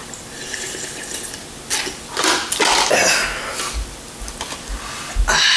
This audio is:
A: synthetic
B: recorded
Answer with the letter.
B